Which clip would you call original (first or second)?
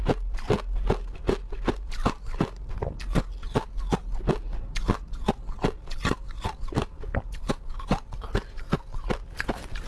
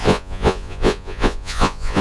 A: first